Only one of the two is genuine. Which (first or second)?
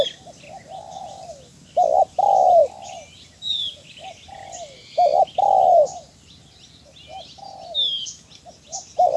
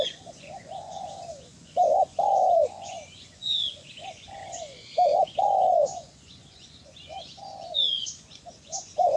first